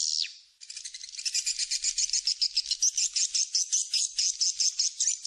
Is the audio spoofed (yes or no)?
no